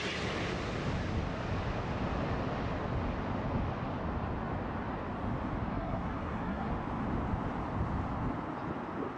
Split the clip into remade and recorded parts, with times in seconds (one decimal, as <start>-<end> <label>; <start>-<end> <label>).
0.0-5.7 recorded; 5.7-6.7 remade; 6.7-9.2 recorded